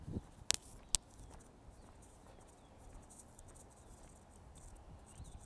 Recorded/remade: recorded